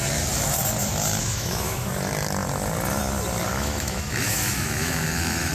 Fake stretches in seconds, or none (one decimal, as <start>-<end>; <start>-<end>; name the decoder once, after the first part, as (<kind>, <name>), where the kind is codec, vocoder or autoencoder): 1.2-1.9 (autoencoder, DAC-VAE); 3.5-5.5

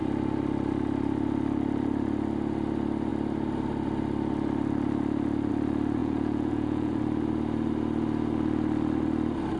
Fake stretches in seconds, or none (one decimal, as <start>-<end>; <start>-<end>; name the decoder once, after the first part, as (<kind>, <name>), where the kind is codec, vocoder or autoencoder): 6.0-7.0 (vocoder, Vocos)

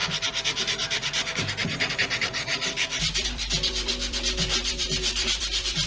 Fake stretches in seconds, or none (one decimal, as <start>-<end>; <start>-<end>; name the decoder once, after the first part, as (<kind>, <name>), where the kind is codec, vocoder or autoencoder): 1.9-5.9 (vocoder, BigVGAN v2)

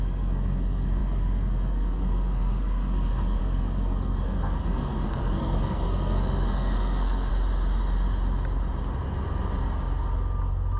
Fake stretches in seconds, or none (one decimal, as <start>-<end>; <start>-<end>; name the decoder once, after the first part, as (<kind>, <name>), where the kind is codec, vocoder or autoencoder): 0.0-7.3 (codec, SNAC)

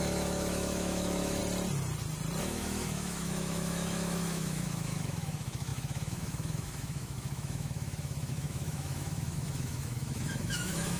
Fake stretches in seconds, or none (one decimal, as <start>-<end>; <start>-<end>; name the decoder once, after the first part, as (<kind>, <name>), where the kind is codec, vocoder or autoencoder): 0.0-1.4 (autoencoder, DAC-VAE); 2.4-11.0

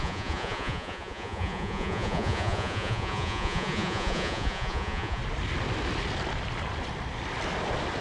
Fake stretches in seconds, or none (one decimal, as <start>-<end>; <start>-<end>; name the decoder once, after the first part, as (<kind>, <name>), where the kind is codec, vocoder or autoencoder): 0.0-5.2 (vocoder, Vocos)